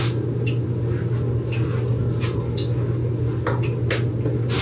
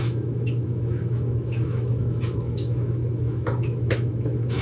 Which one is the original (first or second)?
first